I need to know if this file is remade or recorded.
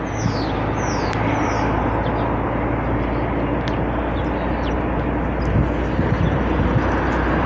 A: recorded